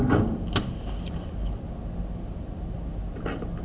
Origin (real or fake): real